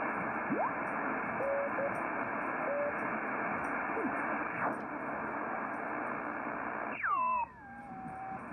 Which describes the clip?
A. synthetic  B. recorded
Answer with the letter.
B